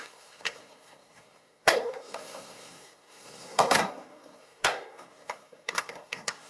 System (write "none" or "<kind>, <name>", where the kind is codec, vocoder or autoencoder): codec, SNAC